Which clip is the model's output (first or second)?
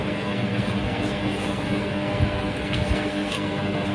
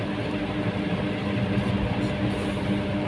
first